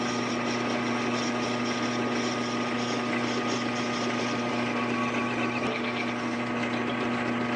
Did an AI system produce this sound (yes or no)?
no